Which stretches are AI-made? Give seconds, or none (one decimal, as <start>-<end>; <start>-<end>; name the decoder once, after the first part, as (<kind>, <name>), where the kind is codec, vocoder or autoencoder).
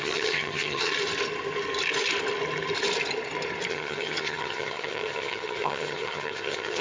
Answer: 0.0-0.9 (vocoder, HiFi-GAN); 3.7-6.8